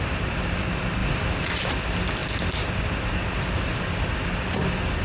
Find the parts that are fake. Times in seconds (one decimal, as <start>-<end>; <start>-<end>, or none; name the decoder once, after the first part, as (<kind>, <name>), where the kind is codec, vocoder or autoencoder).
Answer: none